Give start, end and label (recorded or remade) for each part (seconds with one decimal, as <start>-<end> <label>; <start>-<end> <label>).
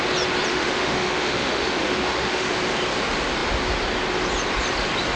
0.0-0.5 recorded; 0.5-2.5 remade; 2.5-5.2 recorded